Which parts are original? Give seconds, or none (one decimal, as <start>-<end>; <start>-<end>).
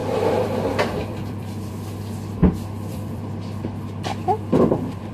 1.7-2.4